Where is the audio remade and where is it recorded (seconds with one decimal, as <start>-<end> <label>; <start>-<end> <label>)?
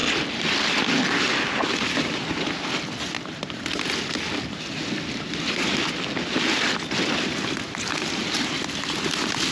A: 0.0-9.5 recorded